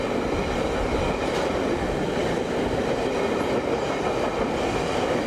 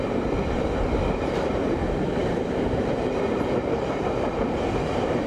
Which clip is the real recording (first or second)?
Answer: first